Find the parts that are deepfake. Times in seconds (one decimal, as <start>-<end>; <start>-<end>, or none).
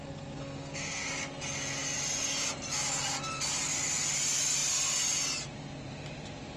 0.0-1.1